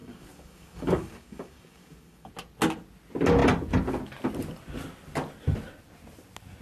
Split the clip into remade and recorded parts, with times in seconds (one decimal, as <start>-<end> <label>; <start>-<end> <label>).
0.0-2.3 remade; 2.3-6.6 recorded